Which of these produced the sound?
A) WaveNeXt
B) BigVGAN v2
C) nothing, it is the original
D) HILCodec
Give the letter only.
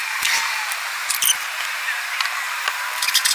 B